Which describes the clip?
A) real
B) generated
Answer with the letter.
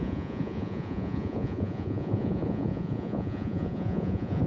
B